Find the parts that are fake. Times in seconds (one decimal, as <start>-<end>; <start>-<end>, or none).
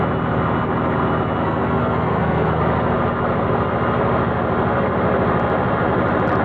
1.4-2.6